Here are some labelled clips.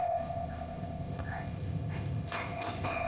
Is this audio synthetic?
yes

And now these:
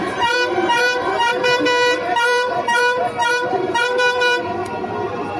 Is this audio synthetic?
yes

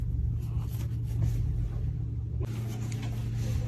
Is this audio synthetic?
no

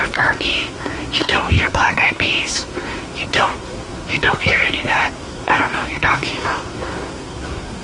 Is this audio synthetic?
yes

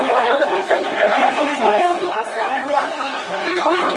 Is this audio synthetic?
yes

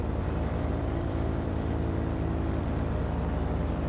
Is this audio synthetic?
yes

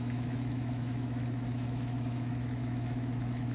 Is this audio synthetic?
yes